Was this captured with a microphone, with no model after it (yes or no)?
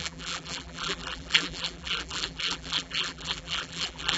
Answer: no